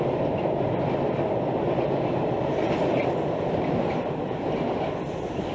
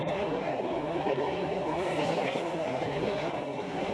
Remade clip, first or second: second